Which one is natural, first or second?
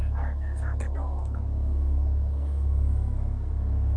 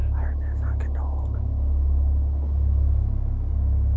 second